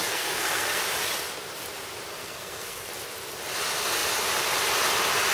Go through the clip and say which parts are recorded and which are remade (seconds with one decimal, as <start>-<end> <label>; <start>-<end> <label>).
0.0-0.8 remade; 0.8-2.1 recorded; 2.1-2.9 remade; 2.9-5.3 recorded